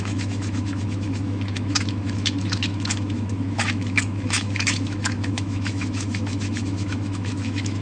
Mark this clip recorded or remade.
remade